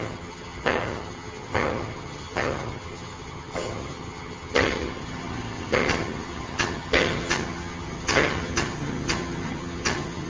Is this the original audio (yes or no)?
no